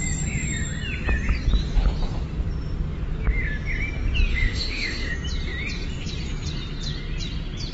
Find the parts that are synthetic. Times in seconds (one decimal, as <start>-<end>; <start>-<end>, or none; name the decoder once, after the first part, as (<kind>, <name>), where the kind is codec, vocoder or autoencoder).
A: 4.3-5.1 (autoencoder, DAC-VAE)